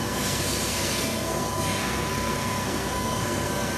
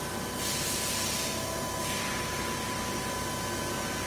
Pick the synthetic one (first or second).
first